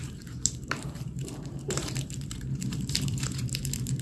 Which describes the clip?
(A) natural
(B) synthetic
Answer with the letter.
B